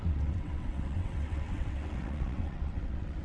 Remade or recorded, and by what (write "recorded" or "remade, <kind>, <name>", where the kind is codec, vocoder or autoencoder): remade, vocoder, WaveNeXt